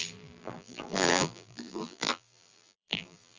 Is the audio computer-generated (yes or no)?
yes